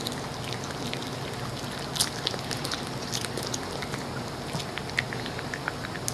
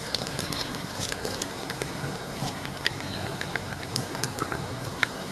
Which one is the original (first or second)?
first